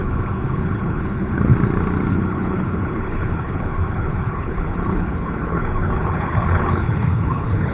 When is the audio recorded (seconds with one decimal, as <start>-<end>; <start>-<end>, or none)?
1.5-2.1